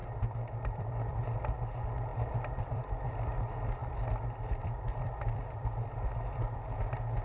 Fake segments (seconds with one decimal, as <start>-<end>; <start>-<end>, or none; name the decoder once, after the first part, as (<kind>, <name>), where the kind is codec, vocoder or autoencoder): 0.0-1.1 (vocoder, BigVGAN v2); 2.1-2.8; 3.8-6.1